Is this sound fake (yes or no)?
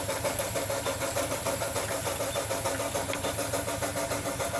no